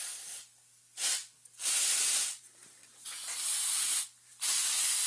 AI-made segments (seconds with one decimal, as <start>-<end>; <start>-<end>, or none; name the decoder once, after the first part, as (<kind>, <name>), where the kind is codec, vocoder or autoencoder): 4.3-5.1 (vocoder, BigVGAN v2)